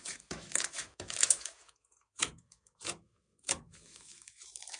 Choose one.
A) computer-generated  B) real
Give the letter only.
A